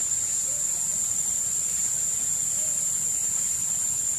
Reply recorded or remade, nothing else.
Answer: recorded